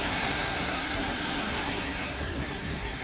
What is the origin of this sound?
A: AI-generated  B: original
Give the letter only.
A